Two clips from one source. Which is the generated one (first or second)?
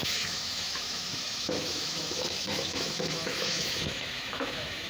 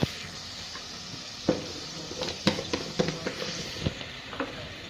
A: first